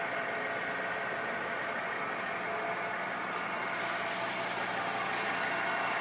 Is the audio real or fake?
real